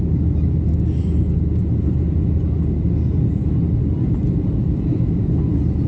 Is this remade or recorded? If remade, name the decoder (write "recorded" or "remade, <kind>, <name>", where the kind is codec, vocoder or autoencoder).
recorded